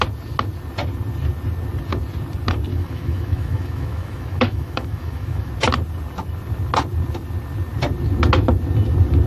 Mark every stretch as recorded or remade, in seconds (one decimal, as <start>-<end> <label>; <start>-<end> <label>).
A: 0.0-2.7 recorded; 2.7-5.5 remade; 5.5-9.3 recorded